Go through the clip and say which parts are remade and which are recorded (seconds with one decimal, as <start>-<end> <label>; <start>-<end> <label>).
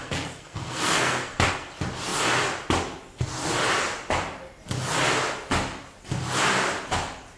0.0-1.7 remade; 1.7-7.4 recorded